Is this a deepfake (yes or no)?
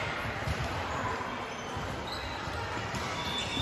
yes